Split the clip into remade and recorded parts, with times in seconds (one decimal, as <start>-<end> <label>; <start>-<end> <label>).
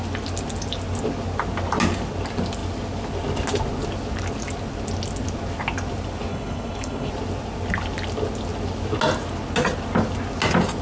0.0-6.3 recorded; 6.3-7.1 remade; 7.1-10.8 recorded